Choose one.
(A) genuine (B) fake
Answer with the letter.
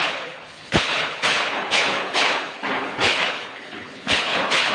B